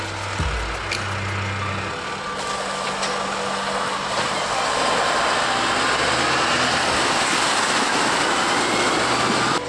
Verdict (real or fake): real